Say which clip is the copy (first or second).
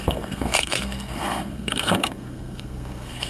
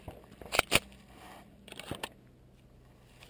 first